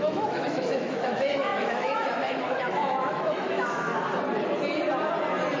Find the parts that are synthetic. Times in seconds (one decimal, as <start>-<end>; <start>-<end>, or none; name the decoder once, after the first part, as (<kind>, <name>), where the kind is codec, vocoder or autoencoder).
0.0-3.9 (autoencoder, DAC-VAE)